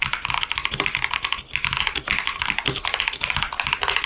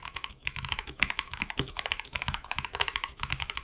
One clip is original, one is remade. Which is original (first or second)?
first